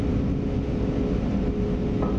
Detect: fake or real real